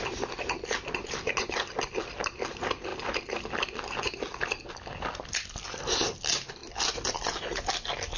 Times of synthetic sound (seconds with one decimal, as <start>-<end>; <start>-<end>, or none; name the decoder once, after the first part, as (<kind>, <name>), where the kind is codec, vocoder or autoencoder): none